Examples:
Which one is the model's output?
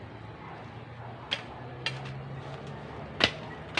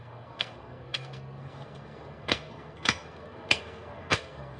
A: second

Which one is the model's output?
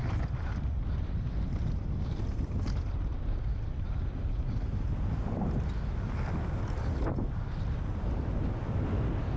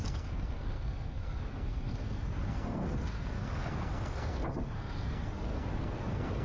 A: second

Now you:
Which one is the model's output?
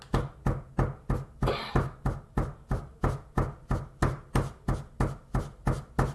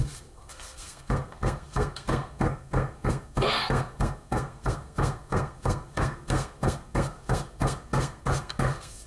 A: second